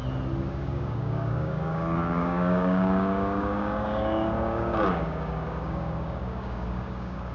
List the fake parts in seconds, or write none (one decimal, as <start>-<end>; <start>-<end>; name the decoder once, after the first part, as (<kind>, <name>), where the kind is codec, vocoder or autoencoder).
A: 0.5-7.3 (codec, DAC)